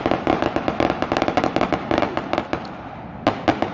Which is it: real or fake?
real